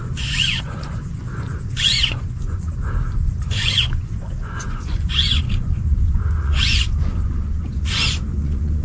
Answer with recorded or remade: remade